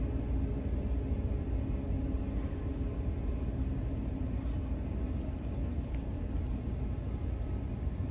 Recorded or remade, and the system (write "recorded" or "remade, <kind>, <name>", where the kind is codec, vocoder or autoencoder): recorded